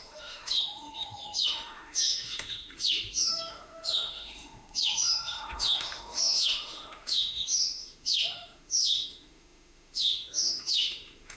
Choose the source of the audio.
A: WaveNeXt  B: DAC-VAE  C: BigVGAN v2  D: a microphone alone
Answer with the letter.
B